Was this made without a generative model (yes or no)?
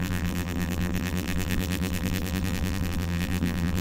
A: no